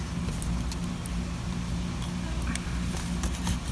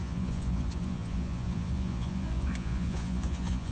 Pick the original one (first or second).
first